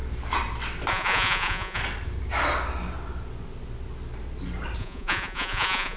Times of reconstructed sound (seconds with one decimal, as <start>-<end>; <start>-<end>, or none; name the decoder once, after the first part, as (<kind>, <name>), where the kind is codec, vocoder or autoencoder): 0.9-1.8 (vocoder, Vocos); 4.8-6.0